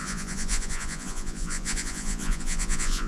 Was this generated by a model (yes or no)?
yes